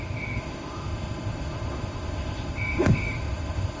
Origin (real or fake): fake